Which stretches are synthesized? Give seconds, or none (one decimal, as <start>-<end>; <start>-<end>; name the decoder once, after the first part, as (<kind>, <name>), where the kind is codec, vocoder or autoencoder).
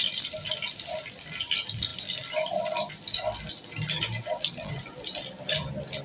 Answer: none